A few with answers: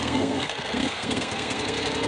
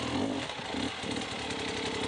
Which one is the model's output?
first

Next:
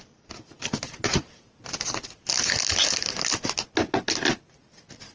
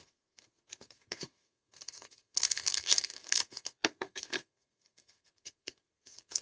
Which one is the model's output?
second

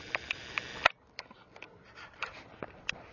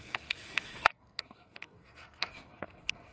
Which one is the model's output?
second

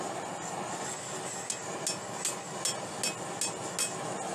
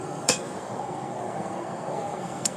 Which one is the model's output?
second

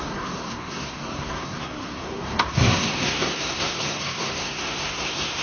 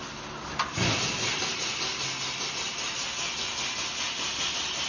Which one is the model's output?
first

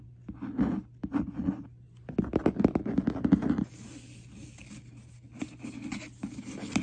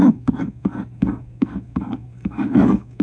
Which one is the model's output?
second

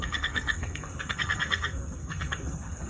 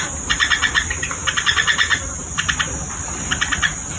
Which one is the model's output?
first